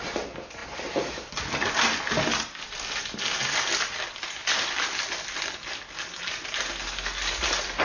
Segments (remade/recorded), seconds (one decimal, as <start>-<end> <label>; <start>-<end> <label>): 0.0-7.8 recorded